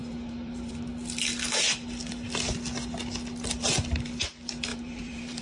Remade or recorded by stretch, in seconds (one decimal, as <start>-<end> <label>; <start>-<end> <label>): 0.0-0.9 remade; 0.9-4.7 recorded; 4.7-5.4 remade